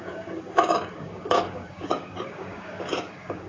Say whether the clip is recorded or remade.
remade